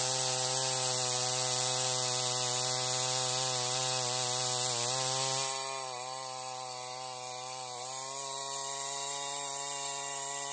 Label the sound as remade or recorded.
recorded